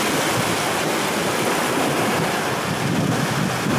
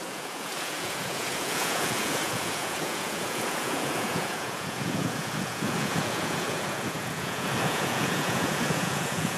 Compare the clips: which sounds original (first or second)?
first